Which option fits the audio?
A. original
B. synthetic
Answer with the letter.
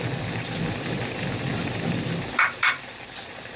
B